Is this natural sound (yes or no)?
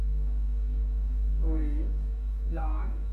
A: no